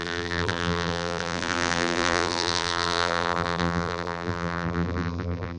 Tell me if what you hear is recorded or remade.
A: remade